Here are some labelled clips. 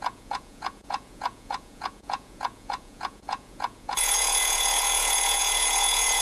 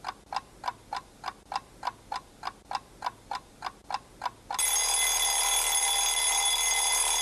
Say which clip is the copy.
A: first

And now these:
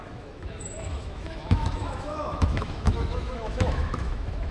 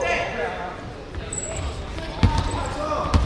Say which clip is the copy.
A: first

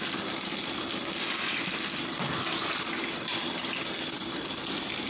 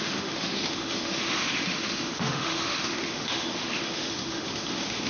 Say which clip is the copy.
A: second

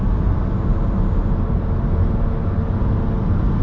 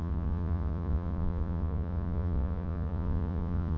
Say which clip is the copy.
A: second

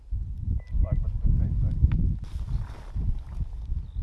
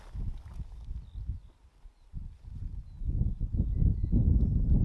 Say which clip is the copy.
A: first